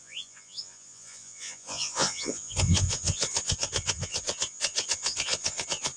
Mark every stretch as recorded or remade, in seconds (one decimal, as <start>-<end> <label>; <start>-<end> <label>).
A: 0.0-6.0 remade